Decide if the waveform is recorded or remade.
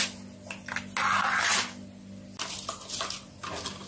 recorded